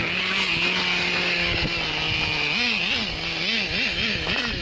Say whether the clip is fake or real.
real